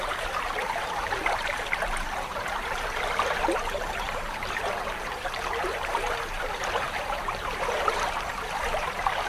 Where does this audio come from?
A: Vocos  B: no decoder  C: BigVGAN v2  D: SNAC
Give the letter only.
C